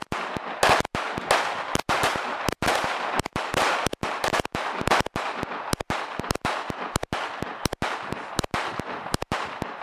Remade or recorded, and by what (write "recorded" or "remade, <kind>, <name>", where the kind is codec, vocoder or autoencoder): recorded